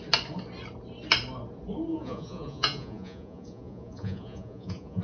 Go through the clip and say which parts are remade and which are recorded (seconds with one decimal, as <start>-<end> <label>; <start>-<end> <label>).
0.0-1.9 recorded; 1.9-5.0 remade